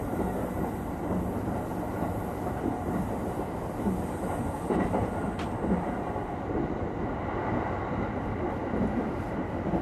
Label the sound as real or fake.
fake